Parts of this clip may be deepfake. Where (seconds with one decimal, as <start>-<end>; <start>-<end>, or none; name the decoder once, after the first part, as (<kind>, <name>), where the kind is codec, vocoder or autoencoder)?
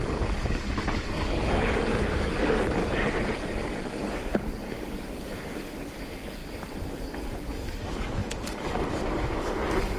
0.0-2.8 (codec, DAC); 4.1-6.4; 6.9-10.0